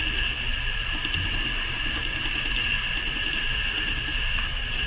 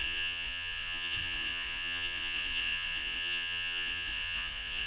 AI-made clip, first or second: second